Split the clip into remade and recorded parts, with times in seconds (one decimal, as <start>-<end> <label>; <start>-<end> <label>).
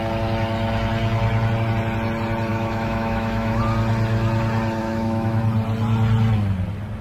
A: 0.0-2.5 recorded; 2.5-3.6 remade; 3.6-4.8 recorded; 4.8-5.4 remade; 5.4-7.0 recorded